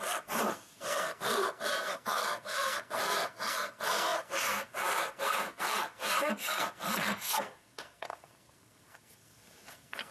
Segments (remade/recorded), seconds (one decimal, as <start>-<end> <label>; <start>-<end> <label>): 0.0-10.1 remade